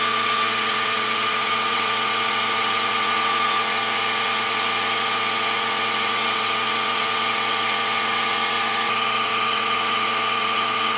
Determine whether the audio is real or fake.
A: fake